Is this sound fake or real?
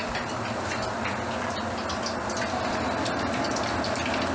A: real